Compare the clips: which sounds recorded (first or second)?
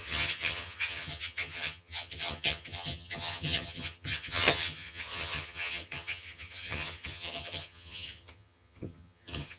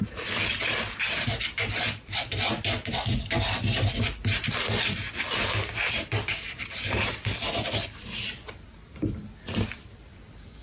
second